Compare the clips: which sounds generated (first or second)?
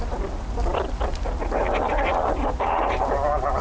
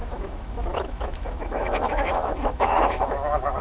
second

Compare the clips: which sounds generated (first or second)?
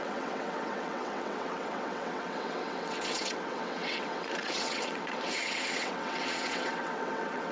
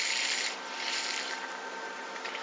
first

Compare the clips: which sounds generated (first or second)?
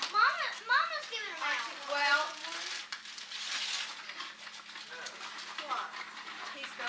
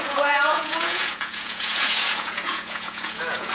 second